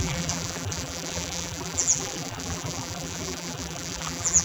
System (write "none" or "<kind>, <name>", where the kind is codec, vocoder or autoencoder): vocoder, BigVGAN v2